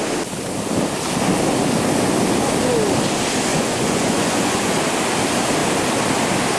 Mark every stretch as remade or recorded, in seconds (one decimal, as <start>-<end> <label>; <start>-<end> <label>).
0.0-3.5 recorded; 3.5-4.7 remade; 4.7-6.6 recorded